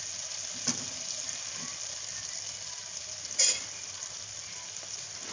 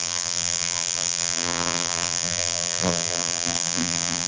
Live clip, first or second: first